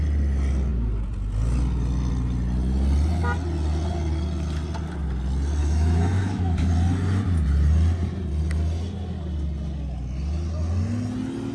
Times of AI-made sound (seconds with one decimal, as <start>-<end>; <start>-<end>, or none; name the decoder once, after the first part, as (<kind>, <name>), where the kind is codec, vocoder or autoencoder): 5.6-6.7 (autoencoder, DAC-VAE)